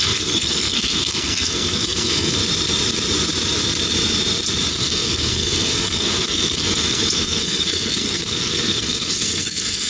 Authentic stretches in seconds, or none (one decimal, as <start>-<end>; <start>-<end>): 2.4-4.7